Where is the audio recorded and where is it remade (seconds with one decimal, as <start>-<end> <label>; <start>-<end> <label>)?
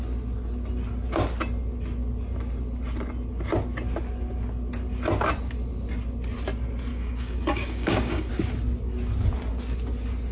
0.0-6.9 recorded; 6.9-8.3 remade; 8.3-10.3 recorded